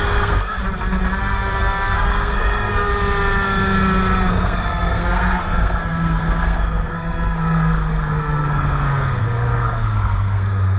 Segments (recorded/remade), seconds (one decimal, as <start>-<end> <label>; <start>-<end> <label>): 0.0-0.6 remade; 0.6-1.2 recorded; 1.2-2.9 remade; 2.9-4.3 recorded; 4.3-10.8 remade